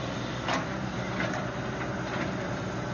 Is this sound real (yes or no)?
yes